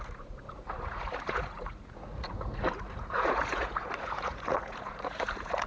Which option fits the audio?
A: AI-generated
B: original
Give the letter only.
A